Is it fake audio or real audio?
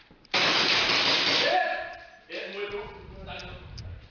real